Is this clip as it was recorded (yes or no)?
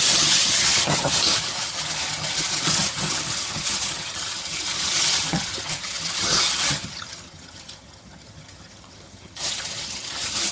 no